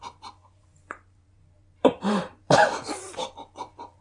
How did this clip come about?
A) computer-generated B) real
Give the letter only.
A